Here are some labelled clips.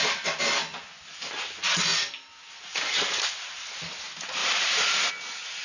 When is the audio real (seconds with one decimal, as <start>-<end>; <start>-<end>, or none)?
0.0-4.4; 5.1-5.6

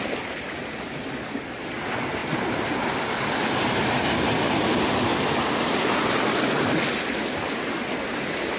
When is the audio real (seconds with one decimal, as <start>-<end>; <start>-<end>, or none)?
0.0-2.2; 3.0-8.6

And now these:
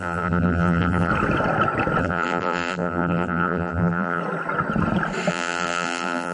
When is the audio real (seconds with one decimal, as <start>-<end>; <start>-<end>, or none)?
1.1-2.0; 4.2-5.3

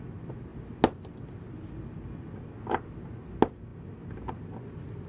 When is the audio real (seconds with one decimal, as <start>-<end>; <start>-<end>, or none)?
0.0-5.1